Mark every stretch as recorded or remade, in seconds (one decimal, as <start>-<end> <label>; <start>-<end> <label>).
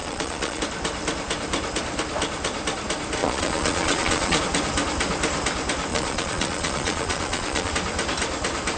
0.0-0.6 remade; 0.6-3.2 recorded; 3.2-4.4 remade; 4.4-5.9 recorded; 5.9-7.7 remade; 7.7-8.8 recorded